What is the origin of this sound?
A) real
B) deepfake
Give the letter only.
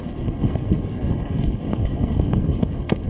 B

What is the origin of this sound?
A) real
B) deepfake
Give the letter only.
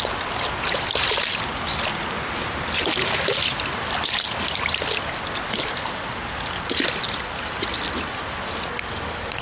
A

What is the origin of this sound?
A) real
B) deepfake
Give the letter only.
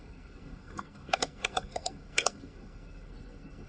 B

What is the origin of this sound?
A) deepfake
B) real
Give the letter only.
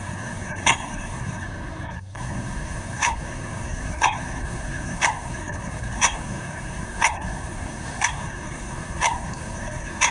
A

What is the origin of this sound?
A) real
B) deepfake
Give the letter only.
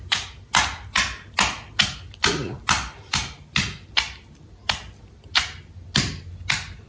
A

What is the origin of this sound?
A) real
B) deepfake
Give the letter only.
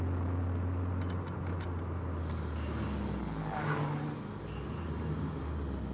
A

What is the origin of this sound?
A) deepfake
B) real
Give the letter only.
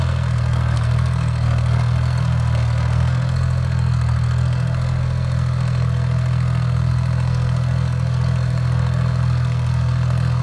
A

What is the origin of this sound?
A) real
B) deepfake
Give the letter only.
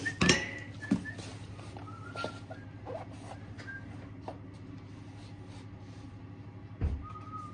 A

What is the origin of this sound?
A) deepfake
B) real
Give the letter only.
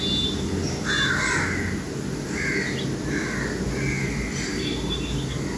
B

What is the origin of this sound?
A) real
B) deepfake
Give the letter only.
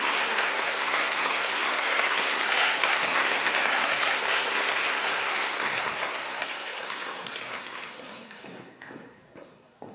B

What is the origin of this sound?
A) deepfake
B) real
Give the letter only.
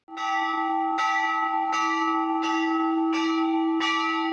B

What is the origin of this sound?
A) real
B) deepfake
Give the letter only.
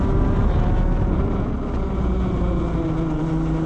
A